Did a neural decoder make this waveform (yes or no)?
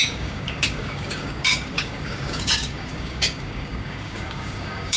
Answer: yes